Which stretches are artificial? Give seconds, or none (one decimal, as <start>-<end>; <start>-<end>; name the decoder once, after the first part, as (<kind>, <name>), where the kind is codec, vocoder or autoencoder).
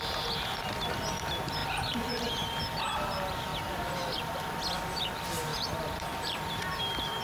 1.6-2.3 (vocoder, BigVGAN v2); 3.5-4.4; 5.5-6.4